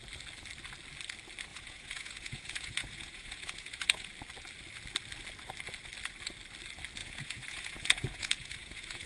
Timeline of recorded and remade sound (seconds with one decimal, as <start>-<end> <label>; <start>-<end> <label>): 0.0-1.5 recorded; 1.5-4.1 remade; 4.1-7.0 recorded; 7.0-9.1 remade